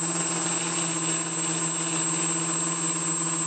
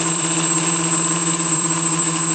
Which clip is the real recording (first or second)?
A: first